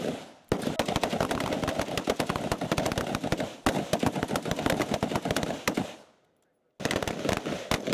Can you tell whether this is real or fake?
real